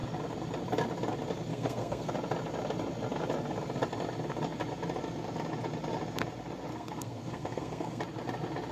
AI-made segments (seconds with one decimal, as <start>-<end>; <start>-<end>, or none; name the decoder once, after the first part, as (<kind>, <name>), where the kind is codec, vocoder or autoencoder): 1.5-2.1 (codec, SNAC); 6.7-8.0